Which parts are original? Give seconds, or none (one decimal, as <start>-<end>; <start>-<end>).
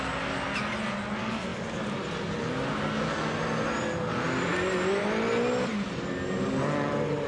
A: 0.0-7.3